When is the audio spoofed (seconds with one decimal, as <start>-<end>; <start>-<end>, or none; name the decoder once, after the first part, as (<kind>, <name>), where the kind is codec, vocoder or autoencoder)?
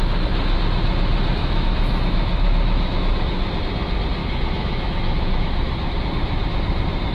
1.4-3.6 (autoencoder, DAC-VAE); 4.2-6.0